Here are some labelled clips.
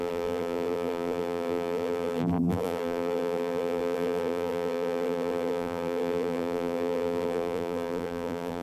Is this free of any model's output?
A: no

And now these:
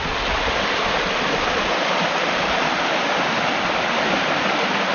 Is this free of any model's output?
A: yes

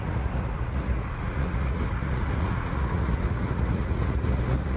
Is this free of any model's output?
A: no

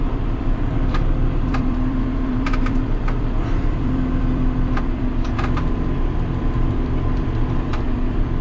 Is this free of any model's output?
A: no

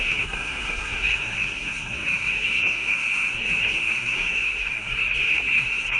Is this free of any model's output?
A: no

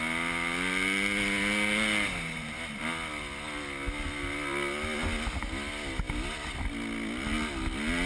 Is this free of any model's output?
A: yes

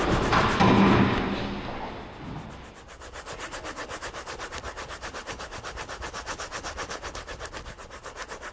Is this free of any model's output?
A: yes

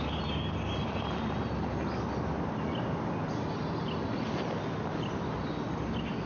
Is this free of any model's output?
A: yes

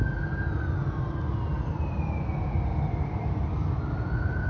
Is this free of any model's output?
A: yes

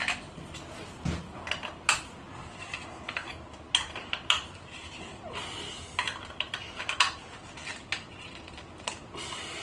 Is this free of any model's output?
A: yes